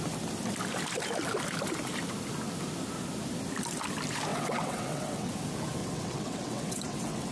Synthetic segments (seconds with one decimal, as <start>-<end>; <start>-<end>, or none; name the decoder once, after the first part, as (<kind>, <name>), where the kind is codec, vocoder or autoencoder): 4.3-5.3 (vocoder, WaveNeXt); 5.8-7.3